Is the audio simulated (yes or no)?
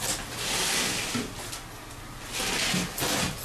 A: no